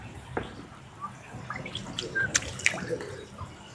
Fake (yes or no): yes